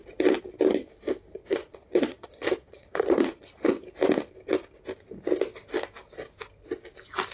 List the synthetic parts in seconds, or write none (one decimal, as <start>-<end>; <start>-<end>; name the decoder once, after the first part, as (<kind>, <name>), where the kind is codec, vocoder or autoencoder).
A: 1.4-3.9 (vocoder, Vocos)